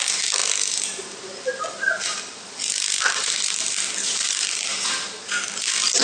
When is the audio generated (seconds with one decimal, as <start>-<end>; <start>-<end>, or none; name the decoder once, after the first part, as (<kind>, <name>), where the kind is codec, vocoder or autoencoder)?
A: none